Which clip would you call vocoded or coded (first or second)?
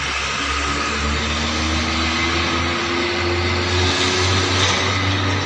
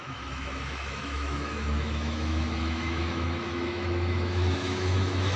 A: second